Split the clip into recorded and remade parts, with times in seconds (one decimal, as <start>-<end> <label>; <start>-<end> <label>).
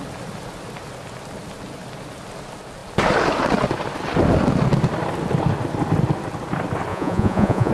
0.0-6.9 recorded; 6.9-7.7 remade